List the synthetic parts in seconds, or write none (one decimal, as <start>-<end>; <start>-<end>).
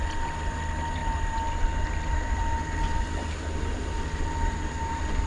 none